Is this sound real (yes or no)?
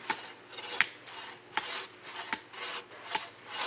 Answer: yes